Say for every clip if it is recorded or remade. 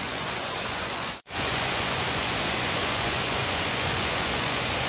remade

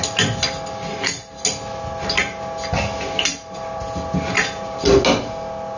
recorded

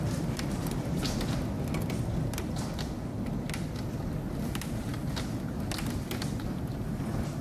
recorded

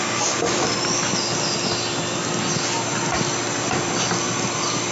recorded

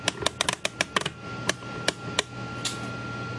recorded